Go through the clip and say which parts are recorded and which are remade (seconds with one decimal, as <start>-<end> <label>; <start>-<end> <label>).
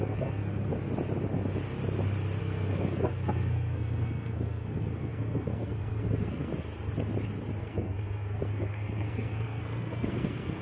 0.0-0.7 remade; 0.7-2.4 recorded; 2.4-6.5 remade; 6.5-7.6 recorded; 7.6-10.6 remade